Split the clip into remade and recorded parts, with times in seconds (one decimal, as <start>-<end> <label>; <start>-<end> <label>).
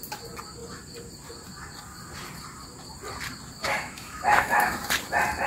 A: 0.0-3.6 recorded; 3.6-4.8 remade; 4.8-5.5 recorded